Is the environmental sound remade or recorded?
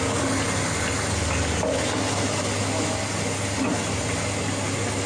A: recorded